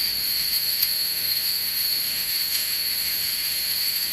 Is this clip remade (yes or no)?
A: yes